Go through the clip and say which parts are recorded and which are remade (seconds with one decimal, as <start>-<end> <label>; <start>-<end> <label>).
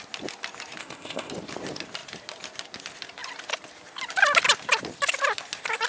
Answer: 0.0-0.8 recorded; 0.8-1.3 remade; 1.3-5.9 recorded